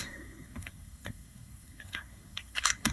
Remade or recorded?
remade